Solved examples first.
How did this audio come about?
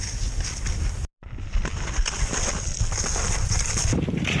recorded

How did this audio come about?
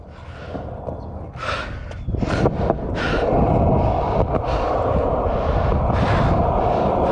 recorded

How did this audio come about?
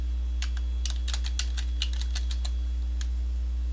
recorded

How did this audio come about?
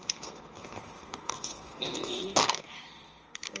remade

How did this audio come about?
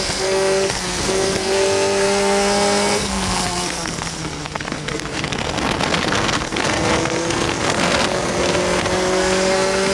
remade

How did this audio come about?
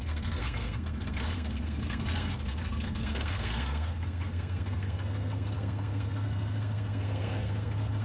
remade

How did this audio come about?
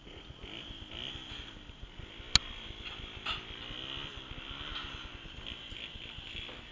recorded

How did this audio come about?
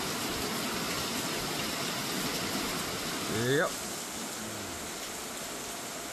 recorded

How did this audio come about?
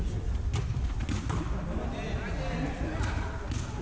recorded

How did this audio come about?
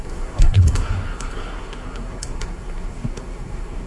remade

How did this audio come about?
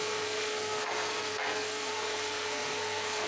remade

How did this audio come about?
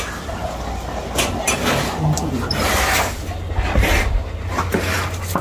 recorded